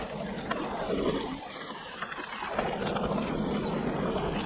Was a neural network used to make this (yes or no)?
no